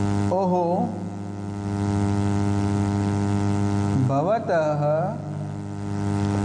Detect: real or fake real